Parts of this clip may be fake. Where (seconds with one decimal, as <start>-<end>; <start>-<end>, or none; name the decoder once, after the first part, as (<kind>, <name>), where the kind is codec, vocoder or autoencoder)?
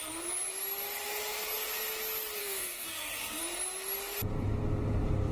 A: 2.4-3.4 (codec, SNAC)